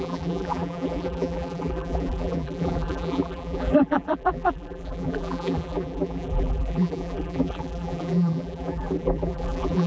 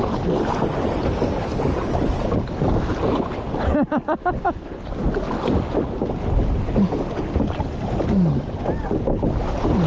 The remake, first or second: first